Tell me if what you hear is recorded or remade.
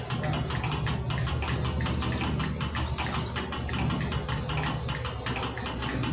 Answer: recorded